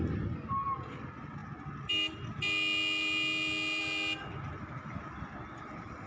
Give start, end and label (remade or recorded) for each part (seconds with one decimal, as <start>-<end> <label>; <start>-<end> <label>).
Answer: 0.0-6.1 recorded